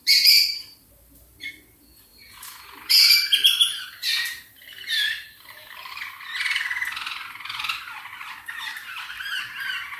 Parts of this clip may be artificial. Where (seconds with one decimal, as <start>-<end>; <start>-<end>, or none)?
0.0-1.5; 2.1-6.0